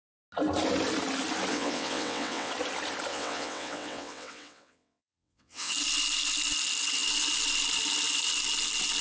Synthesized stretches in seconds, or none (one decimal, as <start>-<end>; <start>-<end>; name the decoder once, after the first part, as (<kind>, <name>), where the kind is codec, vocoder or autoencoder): 1.5-2.5 (vocoder, WaveNeXt); 3.1-5.7